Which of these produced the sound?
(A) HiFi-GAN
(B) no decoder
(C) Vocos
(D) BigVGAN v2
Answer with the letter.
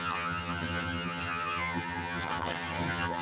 A